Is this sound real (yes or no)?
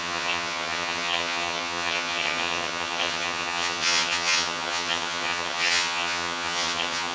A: no